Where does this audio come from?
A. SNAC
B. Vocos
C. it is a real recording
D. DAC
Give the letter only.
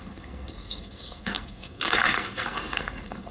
A